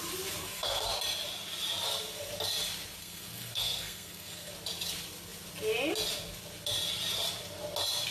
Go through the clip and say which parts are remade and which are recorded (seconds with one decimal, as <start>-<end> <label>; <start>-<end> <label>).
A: 0.0-0.4 recorded; 0.4-0.9 remade; 0.9-3.0 recorded; 3.0-4.5 remade; 4.5-8.1 recorded